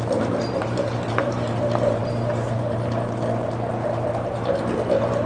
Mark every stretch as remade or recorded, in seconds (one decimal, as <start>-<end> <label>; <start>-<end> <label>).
0.0-2.0 remade; 2.0-5.3 recorded